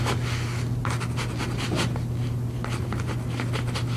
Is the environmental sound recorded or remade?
recorded